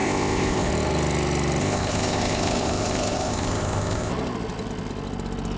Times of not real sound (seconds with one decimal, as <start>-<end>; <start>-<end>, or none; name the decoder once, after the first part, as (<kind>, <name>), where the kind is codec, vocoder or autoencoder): 0.0-0.7 (codec, ZipCodec); 1.6-4.1